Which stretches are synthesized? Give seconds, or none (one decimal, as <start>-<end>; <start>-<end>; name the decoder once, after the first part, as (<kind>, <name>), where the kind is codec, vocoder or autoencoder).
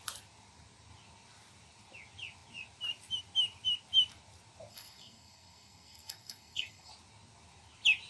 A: 4.7-6.9 (codec, SNAC)